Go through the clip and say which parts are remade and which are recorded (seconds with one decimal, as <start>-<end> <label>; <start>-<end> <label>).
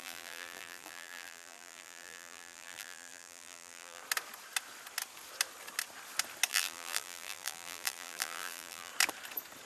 0.0-4.0 remade; 4.0-6.5 recorded; 6.5-8.9 remade; 8.9-9.7 recorded